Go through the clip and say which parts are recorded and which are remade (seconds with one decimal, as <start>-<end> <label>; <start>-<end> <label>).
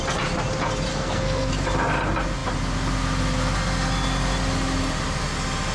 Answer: 0.0-0.9 recorded; 0.9-1.5 remade; 1.5-5.7 recorded